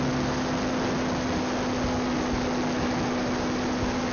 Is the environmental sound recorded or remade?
recorded